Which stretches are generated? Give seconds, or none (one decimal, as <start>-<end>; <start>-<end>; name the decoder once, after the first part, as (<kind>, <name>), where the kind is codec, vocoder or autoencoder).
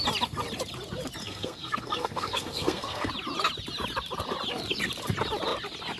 1.2-3.1 (codec, SNAC)